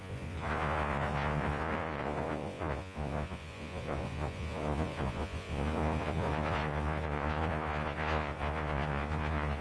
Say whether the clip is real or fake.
fake